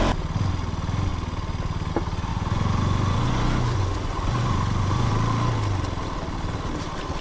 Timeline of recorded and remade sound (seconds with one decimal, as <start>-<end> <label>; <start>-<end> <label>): 0.0-2.3 recorded; 2.3-5.1 remade; 5.1-7.2 recorded